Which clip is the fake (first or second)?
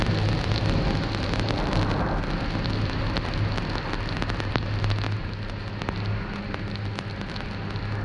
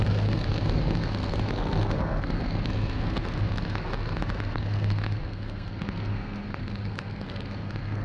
second